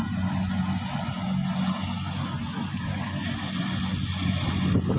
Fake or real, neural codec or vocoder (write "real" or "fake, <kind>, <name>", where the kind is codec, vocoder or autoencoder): real